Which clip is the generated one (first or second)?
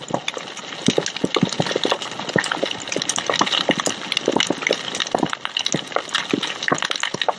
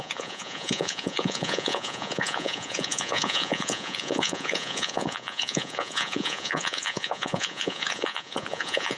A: second